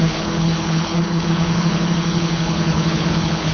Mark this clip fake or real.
fake